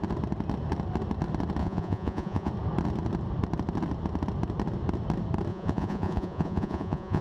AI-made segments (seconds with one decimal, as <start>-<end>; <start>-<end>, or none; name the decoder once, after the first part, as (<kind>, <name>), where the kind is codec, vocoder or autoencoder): 1.6-2.5 (vocoder, Vocos); 5.5-7.2